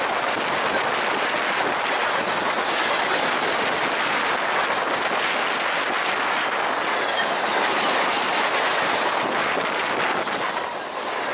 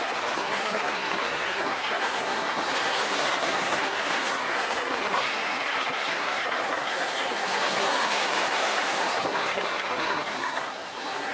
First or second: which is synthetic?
second